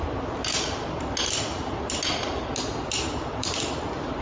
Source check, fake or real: real